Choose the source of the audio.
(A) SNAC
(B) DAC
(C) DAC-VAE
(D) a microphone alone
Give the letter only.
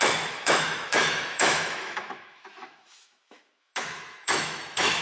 C